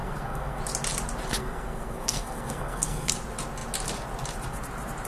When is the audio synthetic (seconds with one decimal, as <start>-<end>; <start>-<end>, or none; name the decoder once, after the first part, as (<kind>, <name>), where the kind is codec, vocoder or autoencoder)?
0.0-0.6 (codec, SNAC); 1.4-3.1